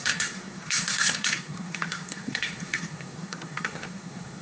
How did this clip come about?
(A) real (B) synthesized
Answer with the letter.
B